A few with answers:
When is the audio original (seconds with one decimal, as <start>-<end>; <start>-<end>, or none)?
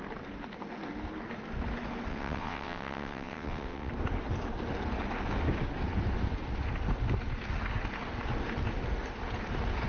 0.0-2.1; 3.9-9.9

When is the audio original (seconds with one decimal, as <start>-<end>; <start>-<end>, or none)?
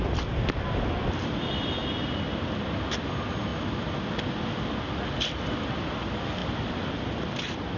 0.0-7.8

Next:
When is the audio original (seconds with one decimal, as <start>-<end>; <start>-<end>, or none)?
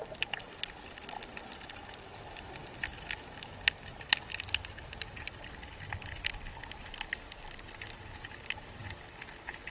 0.0-9.7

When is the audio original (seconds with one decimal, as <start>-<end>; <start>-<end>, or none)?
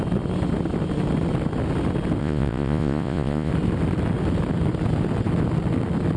0.0-2.2; 3.5-6.2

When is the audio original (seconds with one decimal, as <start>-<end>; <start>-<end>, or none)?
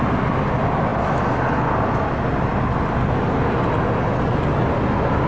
0.0-5.3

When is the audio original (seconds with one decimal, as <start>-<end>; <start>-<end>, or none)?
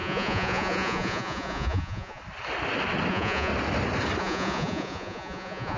2.2-3.1; 3.5-4.2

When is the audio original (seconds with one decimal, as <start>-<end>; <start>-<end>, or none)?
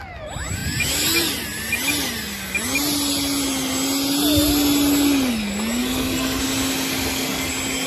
0.0-5.8; 6.4-6.9; 7.5-7.9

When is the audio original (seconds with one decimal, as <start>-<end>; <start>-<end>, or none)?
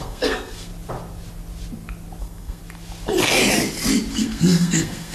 0.7-2.2; 2.6-4.1